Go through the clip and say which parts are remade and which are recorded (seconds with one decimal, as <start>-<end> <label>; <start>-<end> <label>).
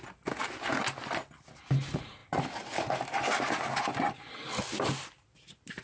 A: 0.0-5.8 recorded